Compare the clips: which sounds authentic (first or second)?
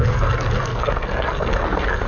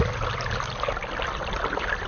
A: second